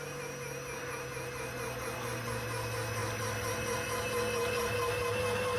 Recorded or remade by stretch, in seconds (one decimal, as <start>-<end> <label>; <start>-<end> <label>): 0.0-5.6 recorded